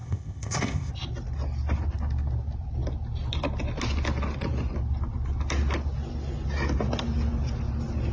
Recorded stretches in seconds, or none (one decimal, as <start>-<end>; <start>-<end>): 0.9-8.1